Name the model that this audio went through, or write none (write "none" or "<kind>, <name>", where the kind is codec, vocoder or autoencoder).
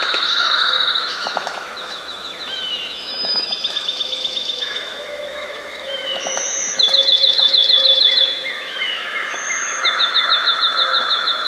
autoencoder, DAC-VAE